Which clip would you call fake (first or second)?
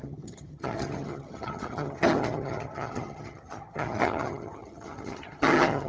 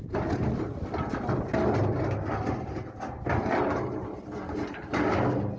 first